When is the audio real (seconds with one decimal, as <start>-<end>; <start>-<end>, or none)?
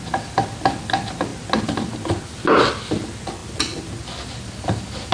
0.0-5.1